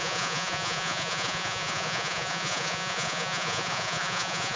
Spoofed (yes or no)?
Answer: yes